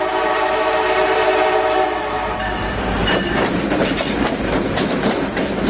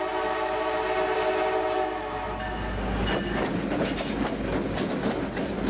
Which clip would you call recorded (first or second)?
second